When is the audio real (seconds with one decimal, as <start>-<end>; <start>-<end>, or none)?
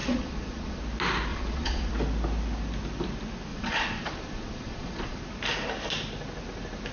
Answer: 0.8-1.3; 1.9-3.5; 5.2-6.9